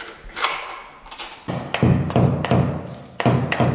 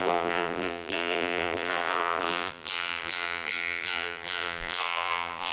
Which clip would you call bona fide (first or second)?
first